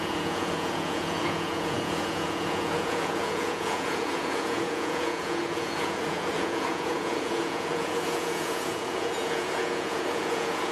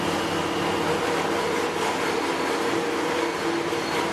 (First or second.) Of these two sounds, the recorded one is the second